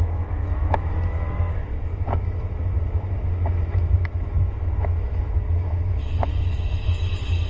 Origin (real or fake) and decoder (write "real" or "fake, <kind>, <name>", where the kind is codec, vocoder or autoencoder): fake, autoencoder, DAC-VAE